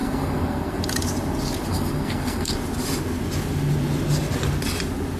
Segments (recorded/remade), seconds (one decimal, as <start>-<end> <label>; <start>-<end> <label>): 0.0-0.8 remade; 0.8-1.7 recorded; 1.7-2.5 remade; 2.5-5.2 recorded